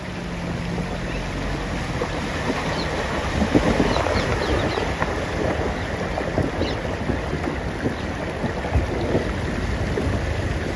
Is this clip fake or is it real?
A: real